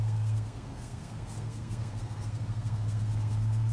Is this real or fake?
fake